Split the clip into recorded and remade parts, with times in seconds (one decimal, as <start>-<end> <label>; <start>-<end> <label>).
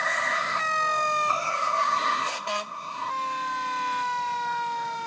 0.0-0.6 remade; 0.6-1.3 recorded; 1.3-3.1 remade; 3.1-5.1 recorded